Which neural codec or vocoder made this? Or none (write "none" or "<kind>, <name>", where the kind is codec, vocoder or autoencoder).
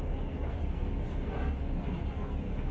codec, SNAC